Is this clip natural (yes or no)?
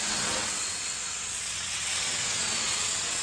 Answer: no